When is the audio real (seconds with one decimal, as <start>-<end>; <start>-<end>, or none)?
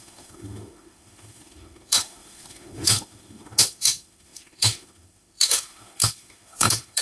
none